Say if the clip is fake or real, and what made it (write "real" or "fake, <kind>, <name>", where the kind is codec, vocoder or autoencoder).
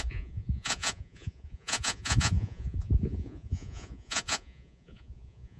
fake, vocoder, Vocos